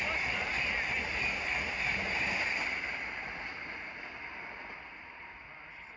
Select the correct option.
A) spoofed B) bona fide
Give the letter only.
B